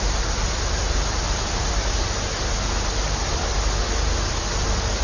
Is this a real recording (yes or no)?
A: yes